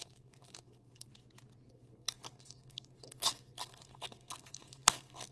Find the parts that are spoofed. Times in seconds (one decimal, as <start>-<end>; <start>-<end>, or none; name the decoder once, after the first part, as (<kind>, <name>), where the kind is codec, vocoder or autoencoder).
0.0-1.1 (codec, SNAC); 1.7-5.3